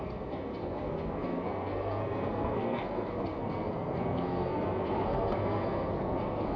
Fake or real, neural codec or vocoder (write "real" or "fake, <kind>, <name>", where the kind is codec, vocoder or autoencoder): fake, codec, SNAC